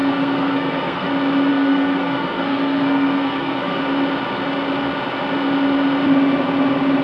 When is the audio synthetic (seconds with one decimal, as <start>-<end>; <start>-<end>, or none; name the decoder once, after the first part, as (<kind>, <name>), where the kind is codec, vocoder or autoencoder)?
0.0-1.1 (codec, SNAC); 1.5-3.8